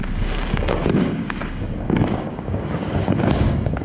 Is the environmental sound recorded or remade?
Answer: remade